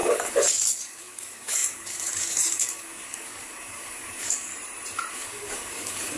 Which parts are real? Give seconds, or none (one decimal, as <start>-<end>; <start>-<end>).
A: 4.5-5.1